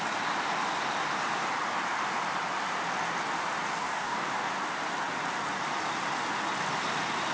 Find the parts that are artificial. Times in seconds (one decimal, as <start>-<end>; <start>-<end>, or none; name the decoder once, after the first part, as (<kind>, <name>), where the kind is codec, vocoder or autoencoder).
3.8-4.5 (codec, DAC)